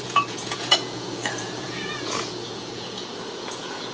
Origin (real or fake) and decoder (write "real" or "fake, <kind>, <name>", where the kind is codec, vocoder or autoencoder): fake, vocoder, Vocos